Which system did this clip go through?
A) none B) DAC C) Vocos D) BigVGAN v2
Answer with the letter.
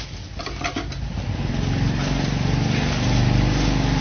A